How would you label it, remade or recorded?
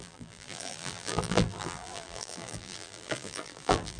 remade